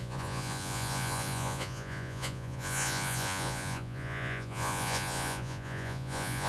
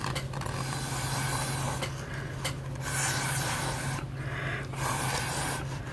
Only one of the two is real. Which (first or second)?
second